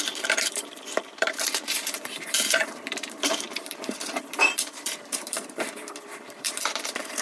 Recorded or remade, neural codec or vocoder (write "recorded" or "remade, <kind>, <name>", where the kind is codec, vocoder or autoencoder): remade, vocoder, BigVGAN v2